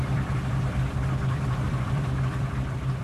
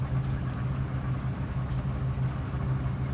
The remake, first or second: first